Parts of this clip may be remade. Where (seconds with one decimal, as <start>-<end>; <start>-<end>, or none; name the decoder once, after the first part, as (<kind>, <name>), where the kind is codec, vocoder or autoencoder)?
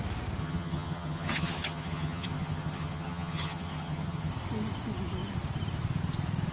0.4-4.3 (vocoder, HiFi-GAN)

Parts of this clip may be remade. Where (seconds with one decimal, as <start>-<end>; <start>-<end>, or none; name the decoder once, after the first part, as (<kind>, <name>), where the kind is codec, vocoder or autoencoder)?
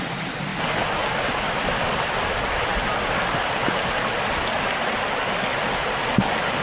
none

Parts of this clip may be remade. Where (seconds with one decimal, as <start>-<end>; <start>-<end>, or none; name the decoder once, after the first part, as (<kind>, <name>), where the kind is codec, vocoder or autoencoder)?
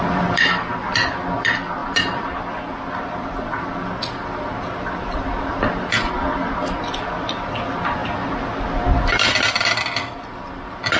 none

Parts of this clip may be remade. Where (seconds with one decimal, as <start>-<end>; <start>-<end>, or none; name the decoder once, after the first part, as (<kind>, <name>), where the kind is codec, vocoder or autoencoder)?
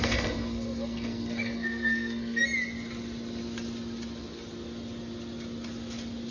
0.0-2.4 (codec, SNAC)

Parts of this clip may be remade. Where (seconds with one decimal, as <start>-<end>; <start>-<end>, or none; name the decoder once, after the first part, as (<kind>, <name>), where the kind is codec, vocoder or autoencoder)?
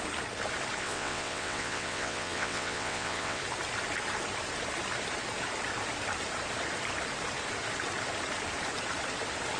0.8-3.4 (vocoder, WaveNeXt)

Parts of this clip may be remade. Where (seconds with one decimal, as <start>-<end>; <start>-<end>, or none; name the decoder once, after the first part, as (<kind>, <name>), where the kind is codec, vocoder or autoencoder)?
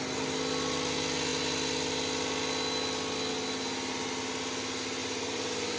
5.0-5.8 (vocoder, BigVGAN v2)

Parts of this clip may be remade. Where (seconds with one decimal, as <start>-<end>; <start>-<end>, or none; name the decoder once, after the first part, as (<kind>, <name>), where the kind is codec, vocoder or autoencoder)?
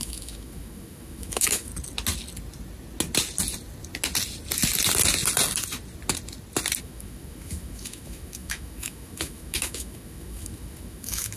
0.0-1.7 (autoencoder, DAC-VAE); 6.8-11.4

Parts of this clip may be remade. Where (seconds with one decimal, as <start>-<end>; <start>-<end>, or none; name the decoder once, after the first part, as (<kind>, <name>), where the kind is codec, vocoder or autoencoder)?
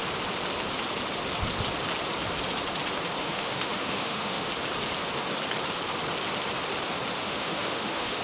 3.2-4.5 (autoencoder, DAC-VAE); 7.2-8.2